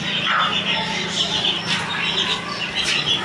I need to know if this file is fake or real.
real